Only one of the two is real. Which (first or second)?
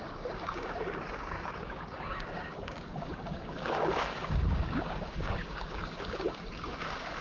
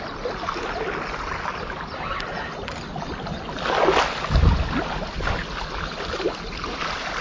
second